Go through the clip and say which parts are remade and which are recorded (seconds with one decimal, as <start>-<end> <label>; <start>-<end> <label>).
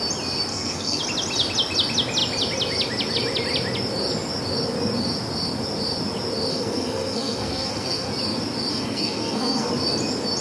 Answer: 0.0-0.5 recorded; 0.5-1.0 remade; 1.0-6.5 recorded; 6.5-8.1 remade; 8.1-8.7 recorded; 8.7-9.7 remade; 9.7-10.4 recorded